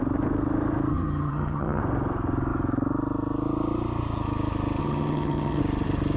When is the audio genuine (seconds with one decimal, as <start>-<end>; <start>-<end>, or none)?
0.0-0.9; 1.8-4.8; 5.6-6.2